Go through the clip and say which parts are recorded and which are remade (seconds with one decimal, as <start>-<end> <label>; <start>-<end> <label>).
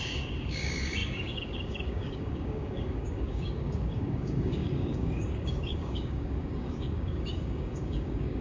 0.0-8.4 remade